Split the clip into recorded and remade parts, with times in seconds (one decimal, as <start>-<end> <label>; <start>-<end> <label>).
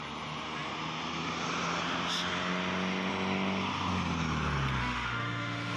0.0-4.8 recorded; 4.8-5.8 remade